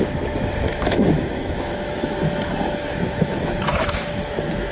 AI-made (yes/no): yes